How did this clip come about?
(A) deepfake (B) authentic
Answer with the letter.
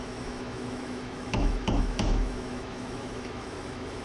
A